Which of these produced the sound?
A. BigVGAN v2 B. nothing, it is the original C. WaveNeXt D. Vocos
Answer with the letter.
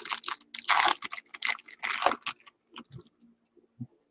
B